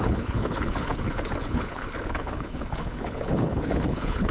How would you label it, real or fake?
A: fake